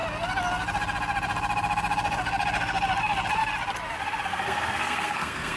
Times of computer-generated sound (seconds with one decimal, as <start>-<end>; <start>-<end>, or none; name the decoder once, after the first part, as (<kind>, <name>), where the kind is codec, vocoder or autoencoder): 4.3-5.6 (codec, SNAC)